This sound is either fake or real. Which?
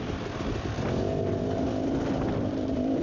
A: real